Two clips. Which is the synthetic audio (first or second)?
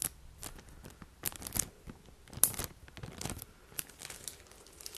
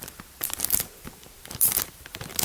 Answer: second